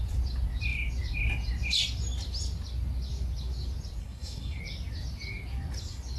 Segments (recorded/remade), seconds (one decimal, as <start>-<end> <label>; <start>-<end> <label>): 0.0-4.0 recorded; 4.0-4.6 remade; 4.6-6.2 recorded